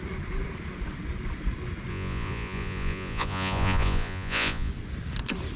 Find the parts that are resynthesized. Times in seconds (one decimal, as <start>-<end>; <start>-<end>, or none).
1.9-4.7